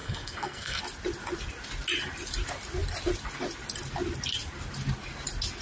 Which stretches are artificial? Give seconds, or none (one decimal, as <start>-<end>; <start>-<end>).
0.0-0.8